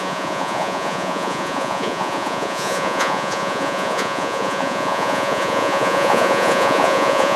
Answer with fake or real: fake